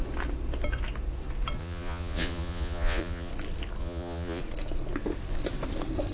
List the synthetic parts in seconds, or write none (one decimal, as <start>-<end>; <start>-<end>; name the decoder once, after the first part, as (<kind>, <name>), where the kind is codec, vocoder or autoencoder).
1.6-3.3 (vocoder, Vocos); 3.8-4.4